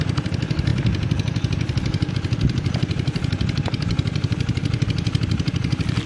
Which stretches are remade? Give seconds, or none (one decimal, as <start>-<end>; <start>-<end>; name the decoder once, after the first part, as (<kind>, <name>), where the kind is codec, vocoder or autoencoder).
none